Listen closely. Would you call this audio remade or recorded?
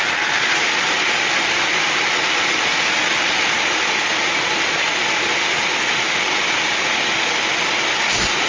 recorded